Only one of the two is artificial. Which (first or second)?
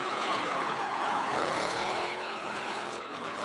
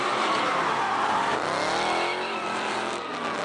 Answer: first